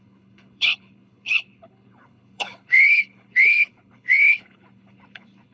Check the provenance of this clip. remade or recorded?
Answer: remade